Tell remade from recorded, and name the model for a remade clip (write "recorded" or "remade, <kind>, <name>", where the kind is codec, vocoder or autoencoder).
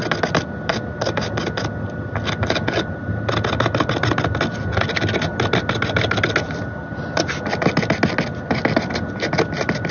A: recorded